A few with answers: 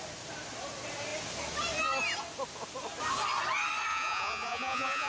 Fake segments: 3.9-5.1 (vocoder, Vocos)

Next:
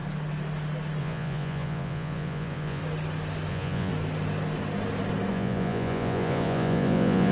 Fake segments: 1.0-2.8 (vocoder, Vocos); 3.5-3.9; 5.3-7.3

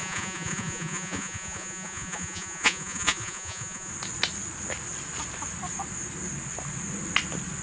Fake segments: 0.0-3.9 (vocoder, Vocos)

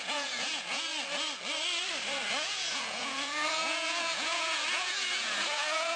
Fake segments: 0.0-0.9 (vocoder, Vocos); 2.3-6.0